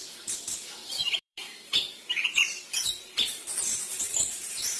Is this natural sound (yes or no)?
no